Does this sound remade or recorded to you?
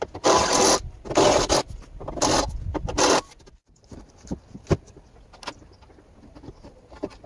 recorded